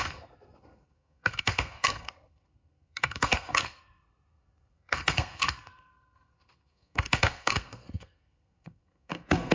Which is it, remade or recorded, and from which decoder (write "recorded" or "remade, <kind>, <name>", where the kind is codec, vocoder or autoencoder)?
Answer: remade, codec, SNAC